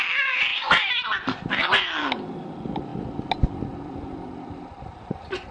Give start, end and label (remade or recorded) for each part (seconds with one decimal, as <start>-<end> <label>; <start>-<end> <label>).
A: 0.0-5.5 recorded

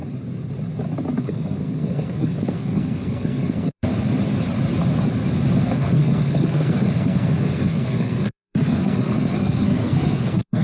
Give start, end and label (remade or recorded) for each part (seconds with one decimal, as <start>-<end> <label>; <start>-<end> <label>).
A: 0.0-1.2 recorded; 1.2-3.9 remade; 3.9-5.6 recorded; 5.6-10.6 remade

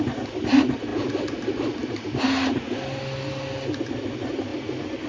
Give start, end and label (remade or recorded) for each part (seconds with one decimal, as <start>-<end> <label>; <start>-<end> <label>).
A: 0.0-5.1 recorded

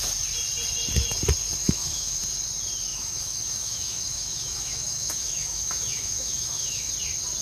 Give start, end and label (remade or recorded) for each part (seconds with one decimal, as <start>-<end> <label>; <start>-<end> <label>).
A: 0.0-1.6 recorded; 1.6-2.2 remade; 2.2-2.9 recorded; 2.9-6.9 remade; 6.9-7.4 recorded

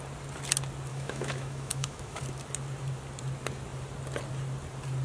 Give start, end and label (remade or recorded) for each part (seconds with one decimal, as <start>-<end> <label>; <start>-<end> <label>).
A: 0.0-0.9 recorded; 0.9-2.2 remade; 2.2-5.0 recorded

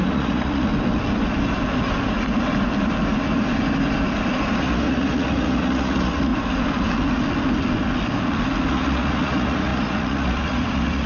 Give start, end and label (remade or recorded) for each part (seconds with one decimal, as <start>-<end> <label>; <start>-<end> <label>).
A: 0.0-0.7 remade; 0.7-4.6 recorded; 4.6-6.3 remade; 6.3-8.7 recorded; 8.7-11.1 remade

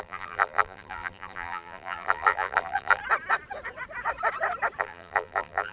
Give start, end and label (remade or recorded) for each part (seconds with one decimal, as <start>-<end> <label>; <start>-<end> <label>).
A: 0.0-3.0 remade; 3.0-4.8 recorded; 4.8-5.7 remade

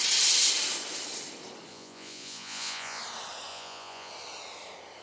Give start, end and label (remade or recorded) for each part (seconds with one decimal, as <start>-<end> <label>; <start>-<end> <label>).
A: 0.0-1.7 recorded; 1.7-3.0 remade; 3.0-3.5 recorded; 3.5-4.1 remade; 4.1-5.0 recorded